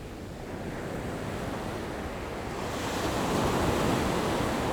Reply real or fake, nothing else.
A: real